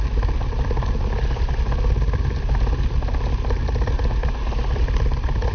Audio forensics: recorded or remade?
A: recorded